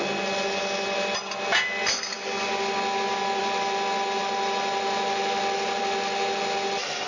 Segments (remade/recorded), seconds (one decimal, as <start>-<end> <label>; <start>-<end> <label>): 0.0-7.1 recorded